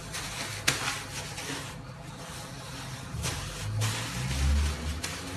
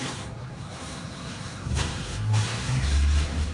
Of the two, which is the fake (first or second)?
second